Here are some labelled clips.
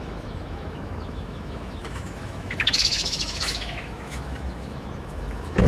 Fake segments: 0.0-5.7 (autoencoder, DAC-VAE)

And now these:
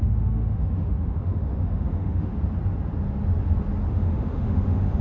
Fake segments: 0.0-2.3 (autoencoder, DAC-VAE); 3.9-5.0

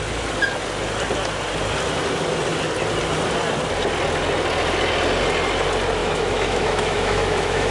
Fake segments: 6.0-7.7 (autoencoder, DAC-VAE)

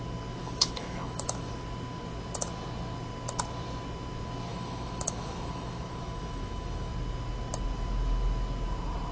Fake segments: 0.4-1.5 (autoencoder, DAC-VAE); 4.5-6.9

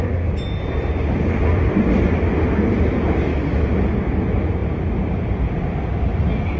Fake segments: 3.3-3.8 (autoencoder, DAC-VAE)

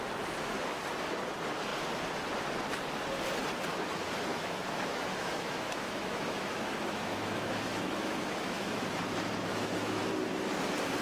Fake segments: 4.3-8.8 (autoencoder, DAC-VAE); 9.5-10.0